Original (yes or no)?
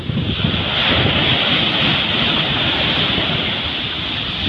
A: yes